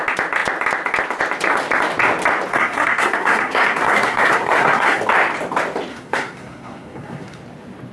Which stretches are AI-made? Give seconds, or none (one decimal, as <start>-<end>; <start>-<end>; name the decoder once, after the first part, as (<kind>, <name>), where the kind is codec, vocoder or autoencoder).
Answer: 2.5-5.0 (codec, SNAC); 5.9-7.4